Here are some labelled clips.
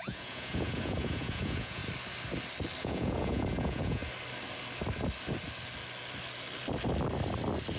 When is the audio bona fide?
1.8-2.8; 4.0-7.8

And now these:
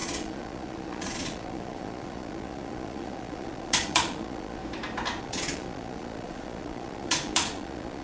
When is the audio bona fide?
4.6-5.2

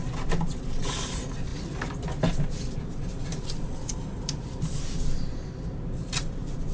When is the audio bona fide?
0.0-6.7

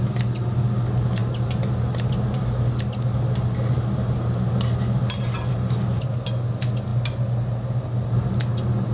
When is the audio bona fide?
0.0-8.9